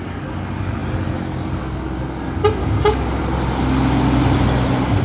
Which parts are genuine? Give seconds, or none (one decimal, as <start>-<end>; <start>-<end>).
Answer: 0.0-2.6; 3.2-5.0